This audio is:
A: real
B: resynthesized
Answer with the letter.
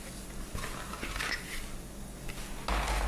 A